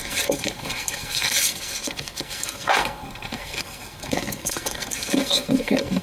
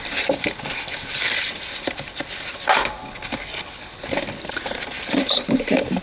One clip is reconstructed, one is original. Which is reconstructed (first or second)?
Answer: first